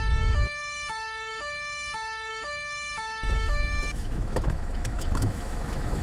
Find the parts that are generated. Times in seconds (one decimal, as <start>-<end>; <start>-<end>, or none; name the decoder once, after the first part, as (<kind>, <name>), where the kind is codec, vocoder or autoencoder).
0.0-6.0 (autoencoder, DAC-VAE)